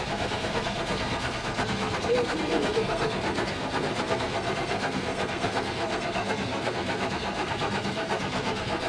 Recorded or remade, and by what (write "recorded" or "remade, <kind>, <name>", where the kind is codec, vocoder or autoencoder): remade, codec, SNAC